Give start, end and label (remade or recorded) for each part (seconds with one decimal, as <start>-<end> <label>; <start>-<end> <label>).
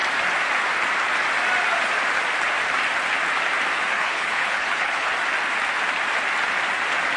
0.0-3.9 recorded; 3.9-5.1 remade; 5.1-7.2 recorded